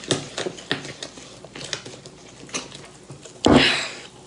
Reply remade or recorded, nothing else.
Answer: recorded